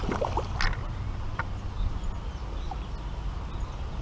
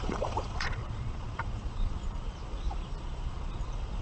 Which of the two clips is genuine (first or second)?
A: first